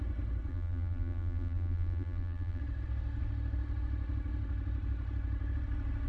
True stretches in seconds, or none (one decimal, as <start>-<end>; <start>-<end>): 0.0-0.5; 2.6-6.1